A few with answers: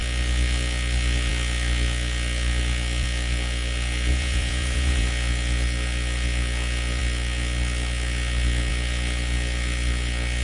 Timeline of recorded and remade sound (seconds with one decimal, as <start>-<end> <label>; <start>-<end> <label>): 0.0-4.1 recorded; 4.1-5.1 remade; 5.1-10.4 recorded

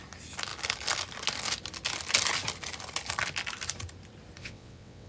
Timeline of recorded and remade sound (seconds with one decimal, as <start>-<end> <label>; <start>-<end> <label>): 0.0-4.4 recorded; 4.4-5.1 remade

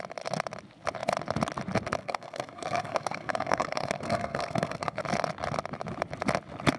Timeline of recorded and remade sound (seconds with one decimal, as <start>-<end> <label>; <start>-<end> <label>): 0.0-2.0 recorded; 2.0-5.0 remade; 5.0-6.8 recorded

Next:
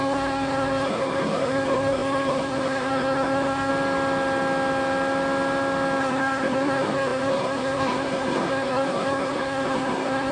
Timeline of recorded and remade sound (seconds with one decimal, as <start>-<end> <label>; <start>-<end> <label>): 0.0-3.7 remade; 3.7-6.0 recorded; 6.0-10.3 remade